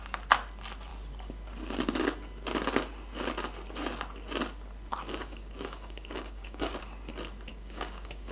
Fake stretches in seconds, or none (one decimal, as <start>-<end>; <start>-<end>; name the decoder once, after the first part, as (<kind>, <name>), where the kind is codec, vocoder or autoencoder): 4.9-6.8 (codec, DAC); 7.5-8.3